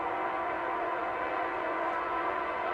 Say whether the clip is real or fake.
fake